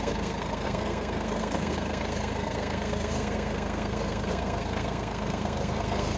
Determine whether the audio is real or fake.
fake